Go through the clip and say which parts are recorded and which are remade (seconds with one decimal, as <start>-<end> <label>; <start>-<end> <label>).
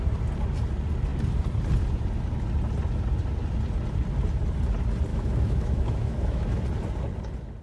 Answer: 0.0-5.1 recorded; 5.1-6.6 remade; 6.6-7.6 recorded